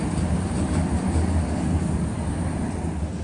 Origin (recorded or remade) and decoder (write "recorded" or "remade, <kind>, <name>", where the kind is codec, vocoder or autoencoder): recorded